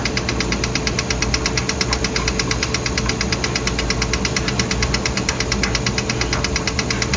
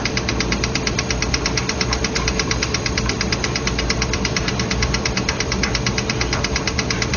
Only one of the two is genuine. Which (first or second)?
first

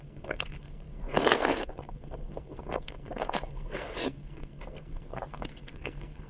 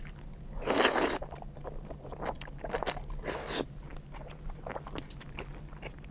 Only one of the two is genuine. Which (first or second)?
second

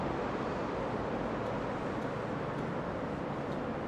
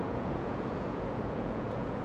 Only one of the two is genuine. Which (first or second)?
first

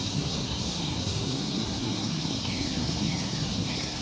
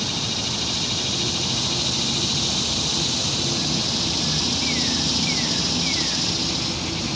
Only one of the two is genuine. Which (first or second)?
second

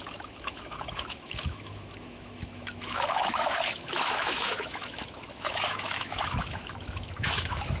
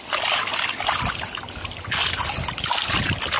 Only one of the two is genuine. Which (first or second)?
second